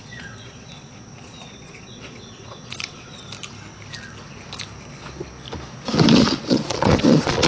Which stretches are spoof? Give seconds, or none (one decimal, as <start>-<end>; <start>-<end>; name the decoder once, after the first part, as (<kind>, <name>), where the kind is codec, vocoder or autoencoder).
0.0-3.2 (vocoder, Vocos); 6.1-7.5